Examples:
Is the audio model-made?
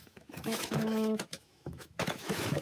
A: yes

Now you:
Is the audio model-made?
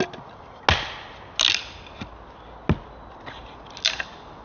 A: no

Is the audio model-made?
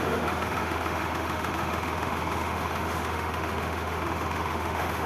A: yes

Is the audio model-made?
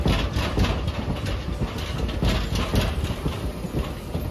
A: no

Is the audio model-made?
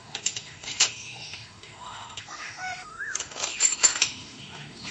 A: yes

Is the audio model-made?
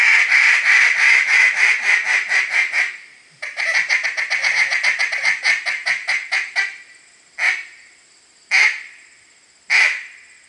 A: no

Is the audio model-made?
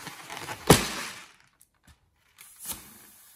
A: no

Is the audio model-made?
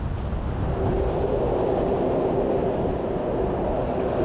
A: no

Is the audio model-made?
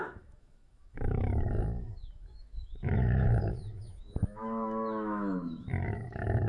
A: yes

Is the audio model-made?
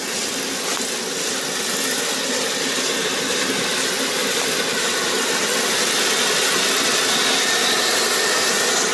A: no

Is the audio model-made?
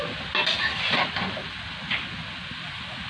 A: no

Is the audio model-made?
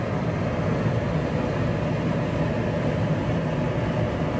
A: no